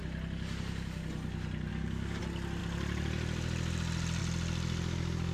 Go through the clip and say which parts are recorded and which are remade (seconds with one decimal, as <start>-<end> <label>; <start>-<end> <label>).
0.0-1.7 recorded; 1.7-2.2 remade; 2.2-5.3 recorded